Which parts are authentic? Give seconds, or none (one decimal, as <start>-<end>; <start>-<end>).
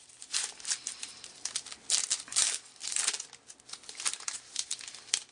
0.0-5.3